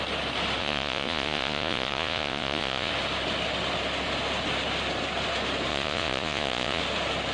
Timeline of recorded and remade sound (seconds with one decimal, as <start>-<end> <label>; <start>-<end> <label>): 0.0-0.6 recorded; 0.6-2.9 remade; 2.9-5.7 recorded; 5.7-6.8 remade; 6.8-7.3 recorded